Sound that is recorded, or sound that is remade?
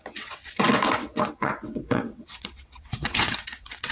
remade